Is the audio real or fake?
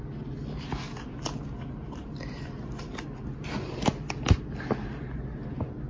real